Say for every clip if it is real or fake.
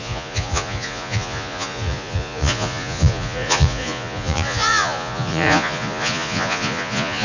fake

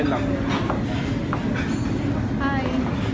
real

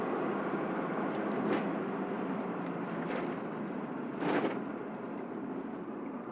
real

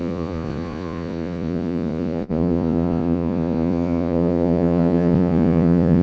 fake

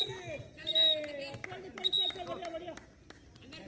real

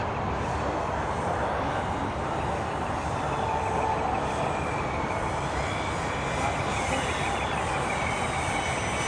real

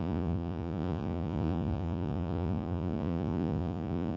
fake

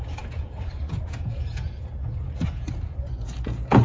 fake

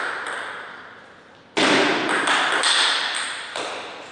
real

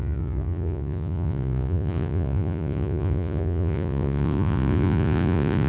fake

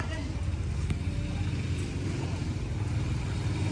real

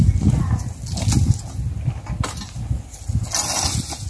real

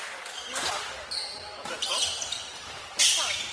real